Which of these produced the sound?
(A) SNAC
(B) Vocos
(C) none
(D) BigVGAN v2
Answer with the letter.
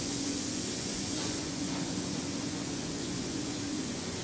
B